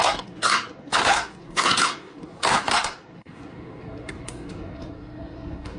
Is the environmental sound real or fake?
fake